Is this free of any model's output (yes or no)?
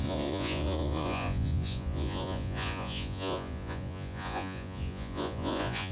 no